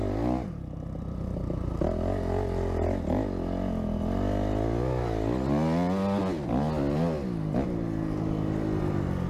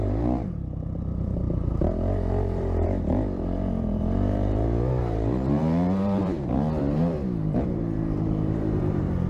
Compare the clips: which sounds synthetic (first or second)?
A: second